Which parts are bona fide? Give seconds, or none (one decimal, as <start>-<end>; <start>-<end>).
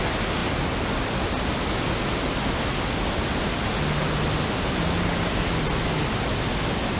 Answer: 0.0-7.0